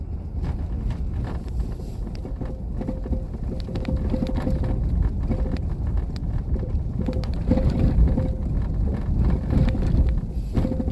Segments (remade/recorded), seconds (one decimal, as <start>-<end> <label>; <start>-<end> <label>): 0.0-6.2 recorded; 6.2-7.9 remade; 7.9-10.9 recorded